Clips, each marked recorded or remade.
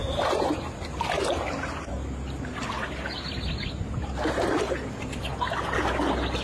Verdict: recorded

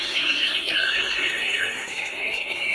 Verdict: remade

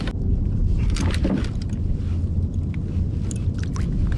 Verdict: recorded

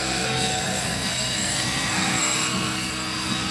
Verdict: remade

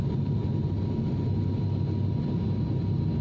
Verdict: recorded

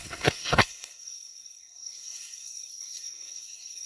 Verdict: remade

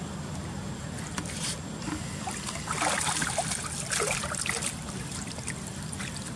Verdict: recorded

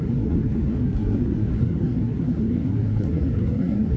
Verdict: remade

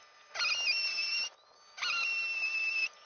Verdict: recorded